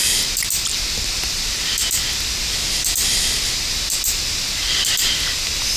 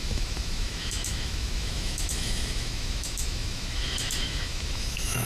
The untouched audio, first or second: first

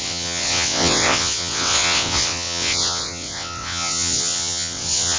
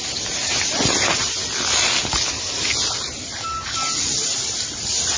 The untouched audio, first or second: second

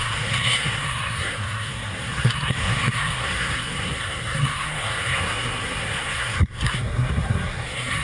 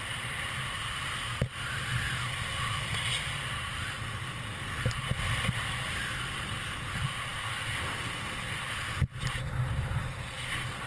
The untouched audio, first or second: second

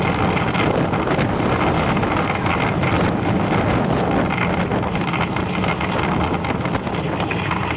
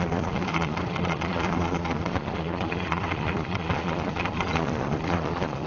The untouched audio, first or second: first